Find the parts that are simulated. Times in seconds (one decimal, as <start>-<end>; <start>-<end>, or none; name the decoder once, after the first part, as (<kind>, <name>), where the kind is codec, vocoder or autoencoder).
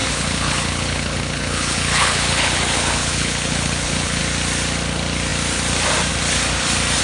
0.0-4.2 (codec, HILCodec)